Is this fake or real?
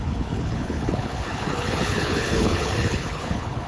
fake